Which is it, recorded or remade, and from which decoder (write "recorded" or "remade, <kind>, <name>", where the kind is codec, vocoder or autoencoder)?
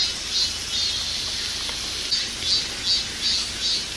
recorded